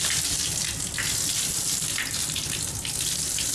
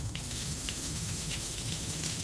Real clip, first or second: first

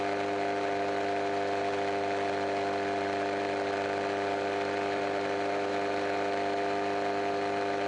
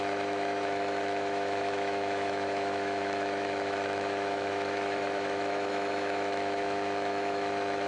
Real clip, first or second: first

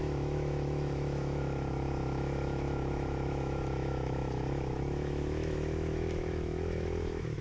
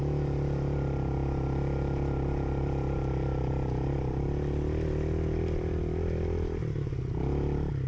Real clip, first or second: second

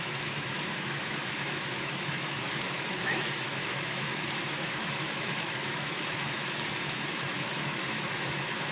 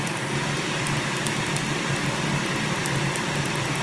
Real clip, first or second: second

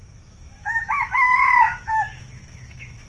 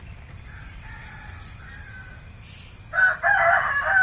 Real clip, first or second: second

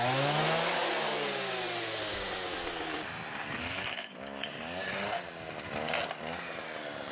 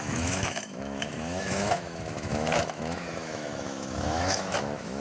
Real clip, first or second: first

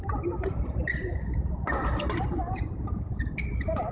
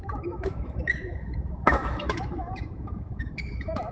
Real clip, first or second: first